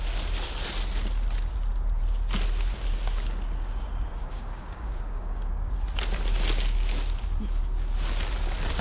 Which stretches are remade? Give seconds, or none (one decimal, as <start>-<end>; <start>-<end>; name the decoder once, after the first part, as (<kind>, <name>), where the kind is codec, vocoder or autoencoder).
4.2-5.7 (codec, DAC)

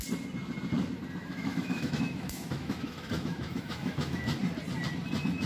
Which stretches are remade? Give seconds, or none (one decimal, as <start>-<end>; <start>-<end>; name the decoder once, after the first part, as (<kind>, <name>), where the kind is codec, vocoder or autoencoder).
1.2-4.3 (autoencoder, DAC-VAE)

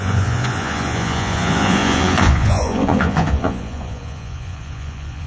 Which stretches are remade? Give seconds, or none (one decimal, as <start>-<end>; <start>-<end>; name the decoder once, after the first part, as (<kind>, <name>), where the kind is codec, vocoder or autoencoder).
0.0-5.3 (vocoder, Vocos)